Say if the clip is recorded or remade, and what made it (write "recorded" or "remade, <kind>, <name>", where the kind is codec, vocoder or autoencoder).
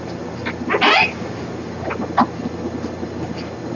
recorded